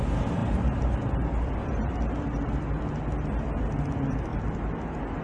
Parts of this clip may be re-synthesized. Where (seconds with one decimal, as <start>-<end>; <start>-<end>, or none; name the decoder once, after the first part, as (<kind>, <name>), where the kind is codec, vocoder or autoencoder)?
0.4-3.0 (vocoder, BigVGAN v2)